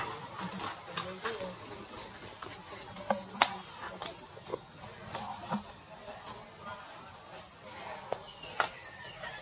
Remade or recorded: recorded